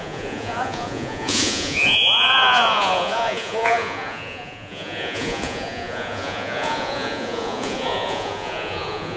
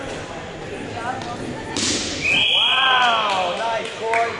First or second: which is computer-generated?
first